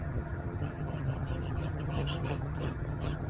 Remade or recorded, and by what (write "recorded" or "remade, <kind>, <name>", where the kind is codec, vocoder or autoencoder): remade, vocoder, HiFi-GAN